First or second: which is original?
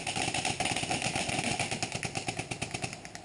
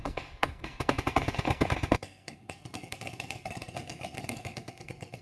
first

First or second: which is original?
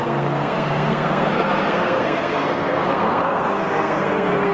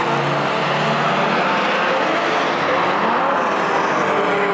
second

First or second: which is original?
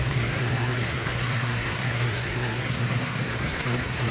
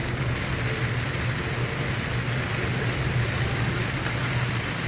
second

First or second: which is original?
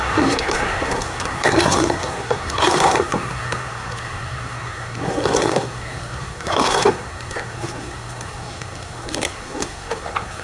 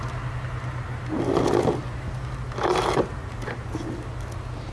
second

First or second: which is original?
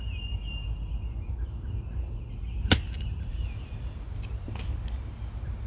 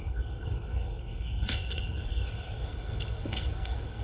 first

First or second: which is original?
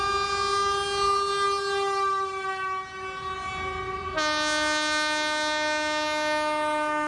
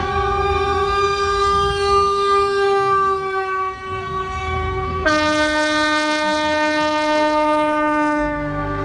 first